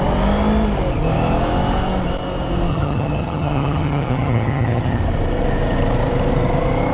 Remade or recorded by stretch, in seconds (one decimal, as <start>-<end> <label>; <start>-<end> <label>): 0.0-2.7 recorded; 2.7-5.0 remade; 5.0-6.9 recorded